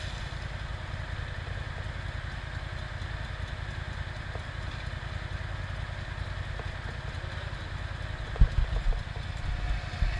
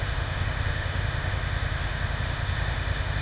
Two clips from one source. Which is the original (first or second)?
first